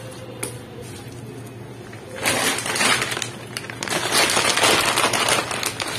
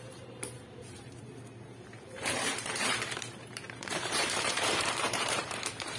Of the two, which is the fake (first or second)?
second